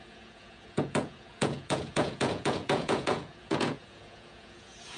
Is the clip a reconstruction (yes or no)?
yes